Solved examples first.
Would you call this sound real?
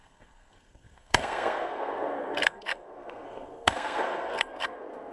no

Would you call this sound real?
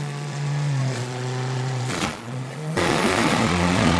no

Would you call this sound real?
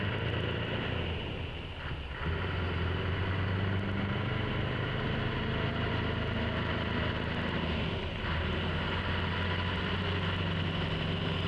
yes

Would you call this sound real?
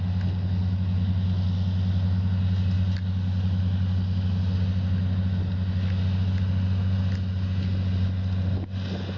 yes